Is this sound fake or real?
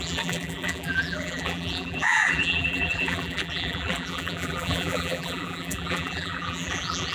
fake